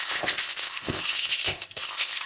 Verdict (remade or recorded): remade